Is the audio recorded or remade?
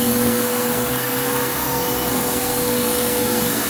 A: remade